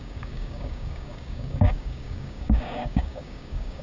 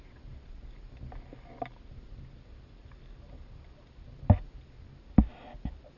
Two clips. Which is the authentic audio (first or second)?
second